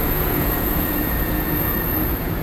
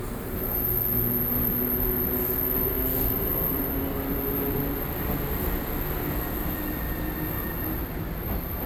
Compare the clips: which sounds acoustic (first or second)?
second